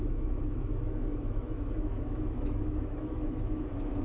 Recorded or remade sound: remade